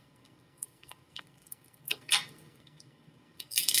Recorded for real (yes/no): no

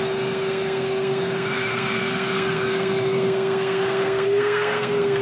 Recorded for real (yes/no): no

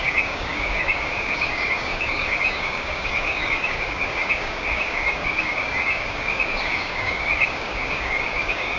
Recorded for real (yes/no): no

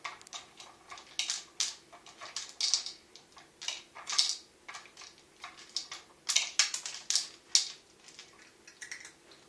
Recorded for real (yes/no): yes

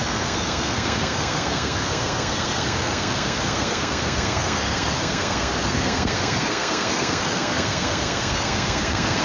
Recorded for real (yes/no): no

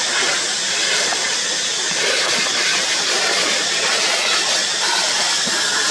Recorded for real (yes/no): yes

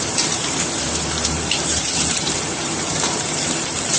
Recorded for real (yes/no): no